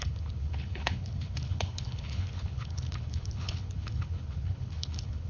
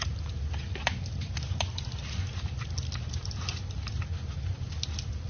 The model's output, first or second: first